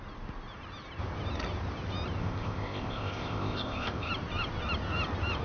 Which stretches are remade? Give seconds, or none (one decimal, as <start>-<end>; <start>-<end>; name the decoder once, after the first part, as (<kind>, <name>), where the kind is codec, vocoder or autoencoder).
2.2-4.1 (codec, ZipCodec)